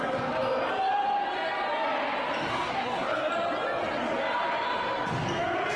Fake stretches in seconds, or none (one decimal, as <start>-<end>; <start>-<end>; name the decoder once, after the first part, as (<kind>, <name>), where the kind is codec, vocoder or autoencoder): 2.5-3.3 (codec, SNAC)